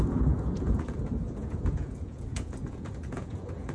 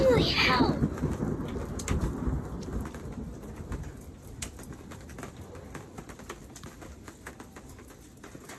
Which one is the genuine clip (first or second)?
second